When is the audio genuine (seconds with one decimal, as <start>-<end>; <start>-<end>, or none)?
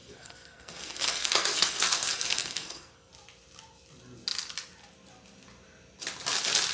3.1-6.7